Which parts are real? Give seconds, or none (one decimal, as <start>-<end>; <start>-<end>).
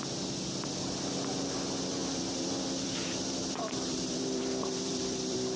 0.0-2.0